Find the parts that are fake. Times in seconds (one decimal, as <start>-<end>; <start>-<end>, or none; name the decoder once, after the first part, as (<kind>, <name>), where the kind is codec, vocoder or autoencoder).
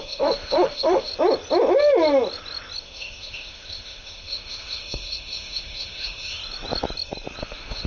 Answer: 0.0-1.1 (autoencoder, DAC-VAE); 2.8-6.4; 7.4-7.9